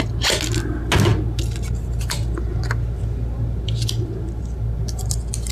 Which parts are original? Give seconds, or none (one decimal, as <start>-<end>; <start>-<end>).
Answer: 0.0-5.5